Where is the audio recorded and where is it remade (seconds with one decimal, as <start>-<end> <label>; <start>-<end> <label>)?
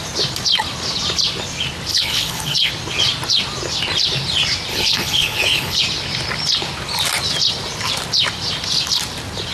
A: 0.0-1.9 recorded; 1.9-2.7 remade; 2.7-4.7 recorded; 4.7-5.8 remade; 5.8-9.5 recorded